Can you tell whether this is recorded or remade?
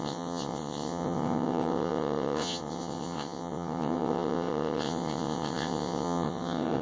remade